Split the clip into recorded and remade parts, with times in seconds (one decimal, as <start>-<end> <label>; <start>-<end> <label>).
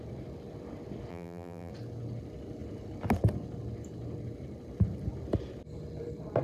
0.0-1.1 recorded; 1.1-1.7 remade; 1.7-6.4 recorded